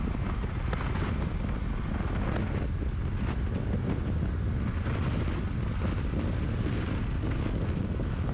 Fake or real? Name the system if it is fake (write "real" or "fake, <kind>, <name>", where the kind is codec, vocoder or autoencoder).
real